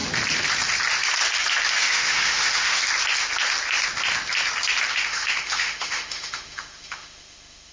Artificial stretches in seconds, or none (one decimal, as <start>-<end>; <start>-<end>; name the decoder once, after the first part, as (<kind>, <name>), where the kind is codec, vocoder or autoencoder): 1.7-2.8 (autoencoder, DAC-VAE); 4.9-7.7

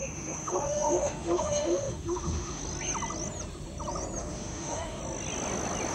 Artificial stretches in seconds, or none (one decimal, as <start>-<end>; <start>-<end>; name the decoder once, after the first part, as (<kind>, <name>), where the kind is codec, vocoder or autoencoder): 0.0-2.6 (autoencoder, DAC-VAE); 4.2-5.0

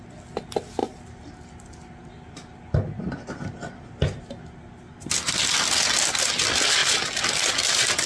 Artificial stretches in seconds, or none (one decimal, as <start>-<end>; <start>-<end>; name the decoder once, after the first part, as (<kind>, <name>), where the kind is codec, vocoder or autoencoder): none

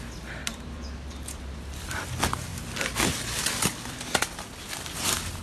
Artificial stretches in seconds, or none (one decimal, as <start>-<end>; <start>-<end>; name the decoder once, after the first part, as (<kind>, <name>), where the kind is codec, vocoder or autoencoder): 0.4-1.1 (vocoder, BigVGAN v2)